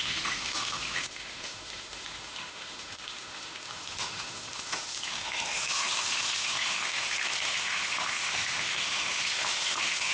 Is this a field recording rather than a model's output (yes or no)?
no